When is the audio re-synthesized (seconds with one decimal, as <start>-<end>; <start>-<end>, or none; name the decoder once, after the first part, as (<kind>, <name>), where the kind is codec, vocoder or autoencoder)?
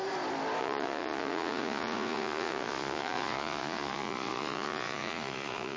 0.6-5.8 (vocoder, Vocos)